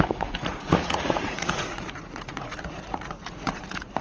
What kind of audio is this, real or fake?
fake